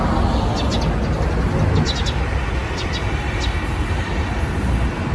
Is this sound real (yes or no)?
yes